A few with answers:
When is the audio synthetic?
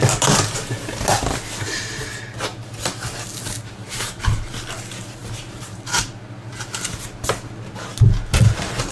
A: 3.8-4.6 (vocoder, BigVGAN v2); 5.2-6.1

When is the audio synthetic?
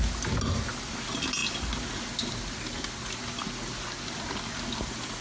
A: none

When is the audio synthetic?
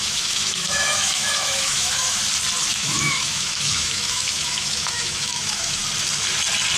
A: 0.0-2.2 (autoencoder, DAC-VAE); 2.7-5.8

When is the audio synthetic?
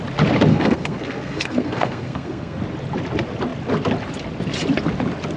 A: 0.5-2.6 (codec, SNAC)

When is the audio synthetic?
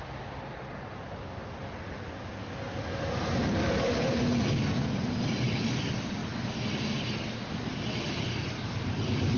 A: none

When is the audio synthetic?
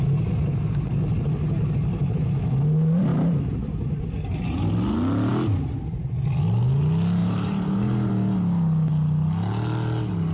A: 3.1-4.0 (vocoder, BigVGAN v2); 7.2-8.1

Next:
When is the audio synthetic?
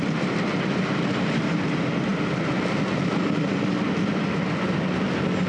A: none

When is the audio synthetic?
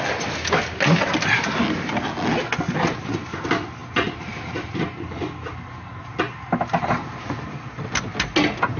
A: none